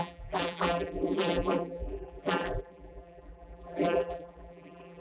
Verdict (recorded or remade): remade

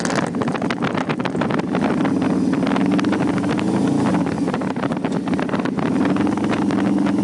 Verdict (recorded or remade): recorded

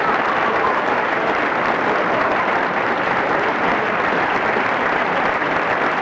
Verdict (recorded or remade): remade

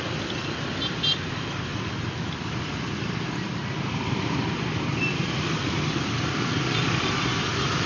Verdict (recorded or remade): remade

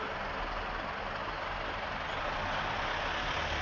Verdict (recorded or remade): recorded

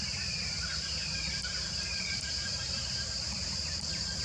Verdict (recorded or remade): remade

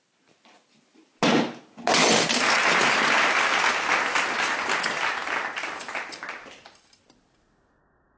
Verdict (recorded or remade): recorded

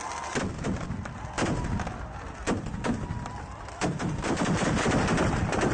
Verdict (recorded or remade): recorded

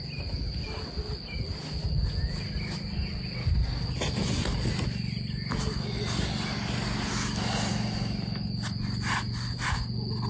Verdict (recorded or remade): recorded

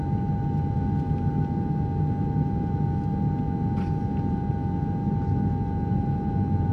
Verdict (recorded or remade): recorded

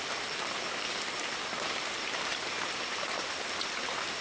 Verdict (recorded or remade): recorded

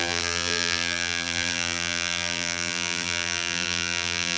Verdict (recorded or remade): remade